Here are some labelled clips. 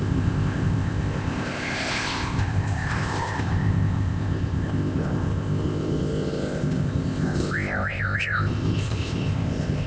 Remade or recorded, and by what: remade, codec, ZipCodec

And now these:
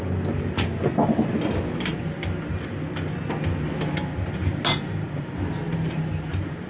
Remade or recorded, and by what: recorded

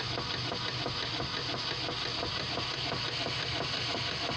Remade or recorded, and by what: recorded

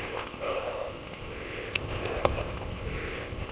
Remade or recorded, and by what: remade, codec, ZipCodec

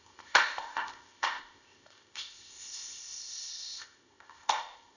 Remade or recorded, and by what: remade, codec, ZipCodec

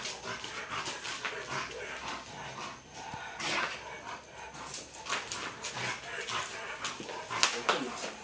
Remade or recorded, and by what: recorded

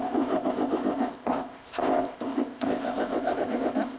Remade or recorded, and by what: remade, codec, ZipCodec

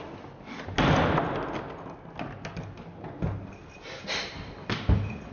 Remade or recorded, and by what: recorded